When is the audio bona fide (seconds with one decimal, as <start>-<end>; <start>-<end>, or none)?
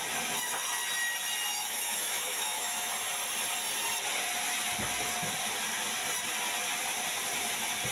0.0-1.5; 2.9-7.9